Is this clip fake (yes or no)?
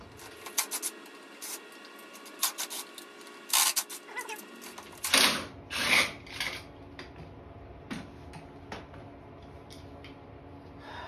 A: no